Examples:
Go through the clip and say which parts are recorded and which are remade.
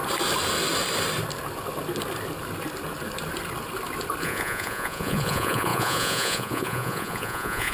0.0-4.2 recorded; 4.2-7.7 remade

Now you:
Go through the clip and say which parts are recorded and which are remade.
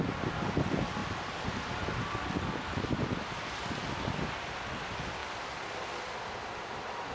0.0-7.1 recorded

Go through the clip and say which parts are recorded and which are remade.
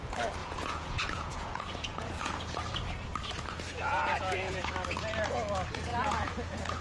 0.0-0.4 recorded; 0.4-2.6 remade; 2.6-3.7 recorded; 3.7-4.7 remade; 4.7-5.9 recorded; 5.9-6.8 remade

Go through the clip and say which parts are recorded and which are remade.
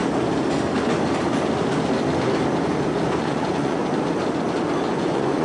0.0-3.2 recorded; 3.2-3.8 remade; 3.8-4.9 recorded; 4.9-5.4 remade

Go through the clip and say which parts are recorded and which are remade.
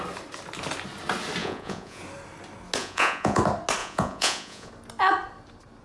0.0-1.4 recorded; 1.4-2.0 remade; 2.0-2.8 recorded; 2.8-3.4 remade; 3.4-3.8 recorded; 3.8-4.7 remade; 4.7-5.8 recorded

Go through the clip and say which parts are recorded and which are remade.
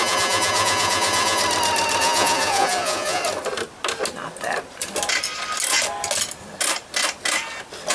0.0-1.4 remade; 1.4-2.0 recorded; 2.0-3.2 remade; 3.2-7.9 recorded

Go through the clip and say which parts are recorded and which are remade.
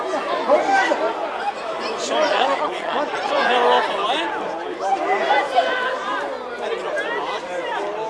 0.0-2.3 recorded; 2.3-3.3 remade; 3.3-8.1 recorded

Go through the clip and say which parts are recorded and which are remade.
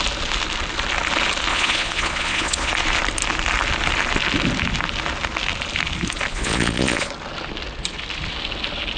0.0-1.5 recorded; 1.5-2.7 remade; 2.7-6.3 recorded; 6.3-7.1 remade; 7.1-9.0 recorded